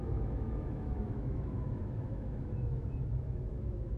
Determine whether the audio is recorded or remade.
remade